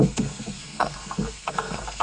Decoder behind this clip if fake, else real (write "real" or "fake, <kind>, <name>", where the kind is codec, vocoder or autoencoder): fake, codec, SNAC